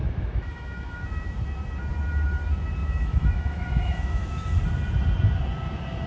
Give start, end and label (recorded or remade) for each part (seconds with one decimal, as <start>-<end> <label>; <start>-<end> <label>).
0.0-1.0 remade; 1.0-2.8 recorded; 2.8-4.6 remade; 4.6-6.1 recorded